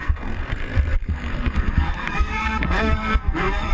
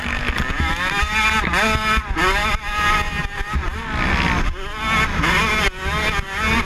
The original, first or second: second